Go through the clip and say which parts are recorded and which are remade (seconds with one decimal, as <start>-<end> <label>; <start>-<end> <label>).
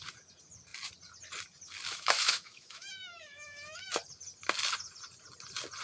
0.0-1.9 recorded; 1.9-3.9 remade; 3.9-5.8 recorded